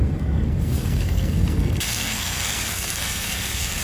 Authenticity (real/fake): fake